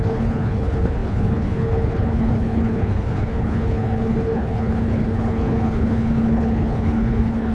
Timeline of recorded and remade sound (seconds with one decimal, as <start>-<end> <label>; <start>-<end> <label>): 0.0-7.5 remade